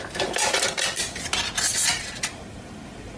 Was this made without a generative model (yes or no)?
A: yes